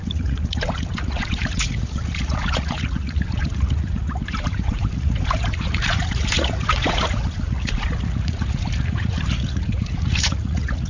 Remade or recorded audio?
remade